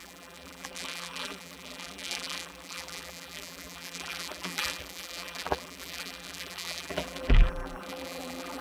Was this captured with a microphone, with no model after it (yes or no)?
no